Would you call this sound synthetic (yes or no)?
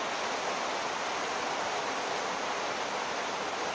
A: no